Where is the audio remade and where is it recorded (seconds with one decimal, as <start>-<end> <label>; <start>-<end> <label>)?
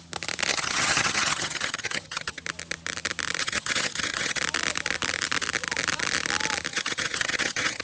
0.0-0.5 recorded; 0.5-2.4 remade; 2.4-3.4 recorded; 3.4-4.4 remade; 4.4-6.7 recorded; 6.7-7.8 remade